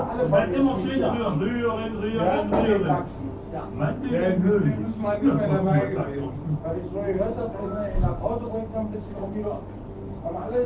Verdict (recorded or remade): recorded